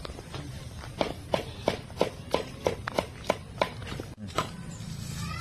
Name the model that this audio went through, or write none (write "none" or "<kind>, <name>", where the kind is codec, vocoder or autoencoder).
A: vocoder, BigVGAN v2